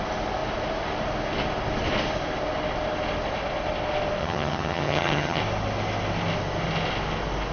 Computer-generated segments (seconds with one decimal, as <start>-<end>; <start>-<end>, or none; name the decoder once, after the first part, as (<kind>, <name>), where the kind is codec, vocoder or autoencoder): 4.2-5.4 (vocoder, HiFi-GAN)